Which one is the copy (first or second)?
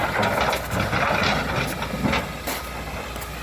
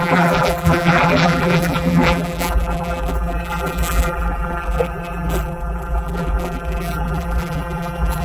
second